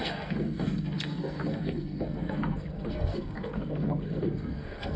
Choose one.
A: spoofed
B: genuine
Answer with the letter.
A